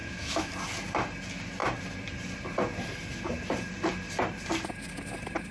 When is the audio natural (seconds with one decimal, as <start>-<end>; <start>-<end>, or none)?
0.5-5.5

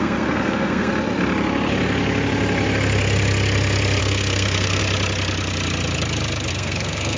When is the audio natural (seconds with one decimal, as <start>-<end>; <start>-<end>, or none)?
0.9-4.0; 4.8-6.5

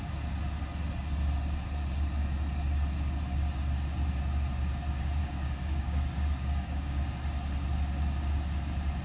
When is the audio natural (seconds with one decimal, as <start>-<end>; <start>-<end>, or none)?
0.0-5.2; 7.0-9.0

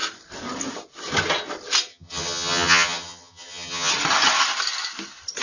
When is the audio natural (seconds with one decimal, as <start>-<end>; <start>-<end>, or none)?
0.0-1.9; 3.9-5.4

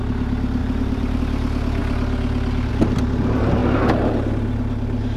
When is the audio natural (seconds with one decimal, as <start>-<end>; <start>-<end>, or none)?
0.0-0.6; 1.2-3.6; 4.1-5.2